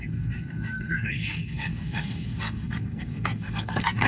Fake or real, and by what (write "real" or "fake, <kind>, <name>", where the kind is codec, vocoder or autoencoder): fake, codec, SNAC